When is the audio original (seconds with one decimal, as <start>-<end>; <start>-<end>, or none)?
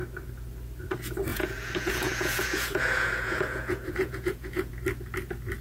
0.0-1.3; 4.7-5.6